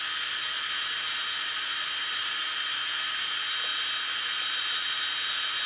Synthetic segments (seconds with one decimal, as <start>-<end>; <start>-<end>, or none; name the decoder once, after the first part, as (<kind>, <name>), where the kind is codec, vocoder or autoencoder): 0.8-2.4 (vocoder, BigVGAN v2)